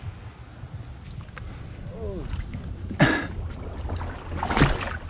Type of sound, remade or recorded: recorded